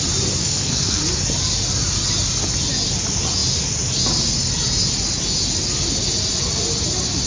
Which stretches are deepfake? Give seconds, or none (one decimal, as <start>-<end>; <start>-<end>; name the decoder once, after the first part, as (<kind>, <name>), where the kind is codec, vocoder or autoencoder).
0.4-1.0 (codec, SNAC)